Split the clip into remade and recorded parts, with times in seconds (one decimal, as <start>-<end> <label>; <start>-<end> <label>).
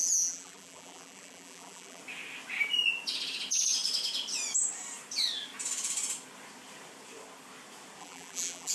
0.0-2.0 remade; 2.0-8.0 recorded; 8.0-8.7 remade